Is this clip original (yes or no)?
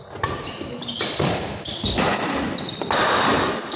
yes